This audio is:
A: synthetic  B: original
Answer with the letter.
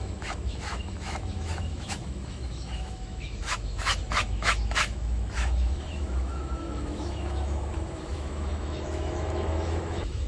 A